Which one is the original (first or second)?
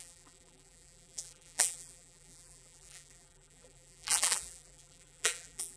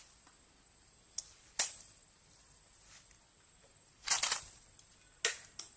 second